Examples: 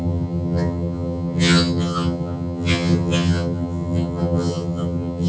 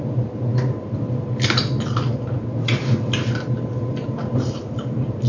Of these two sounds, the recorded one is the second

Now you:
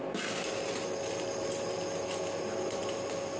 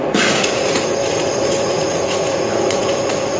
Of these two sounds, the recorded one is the first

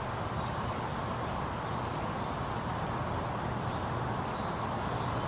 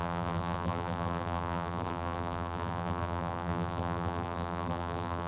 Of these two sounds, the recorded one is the first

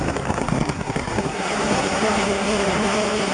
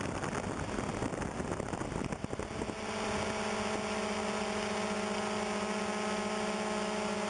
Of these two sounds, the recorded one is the second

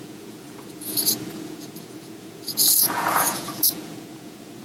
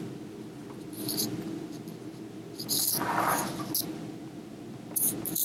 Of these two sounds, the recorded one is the second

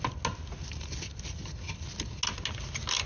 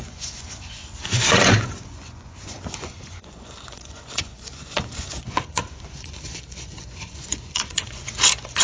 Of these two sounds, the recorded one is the first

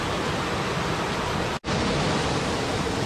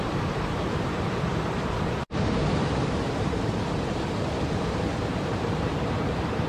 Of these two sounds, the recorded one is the first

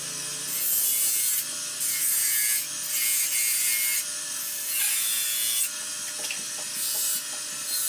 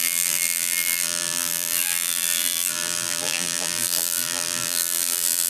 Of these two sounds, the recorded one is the first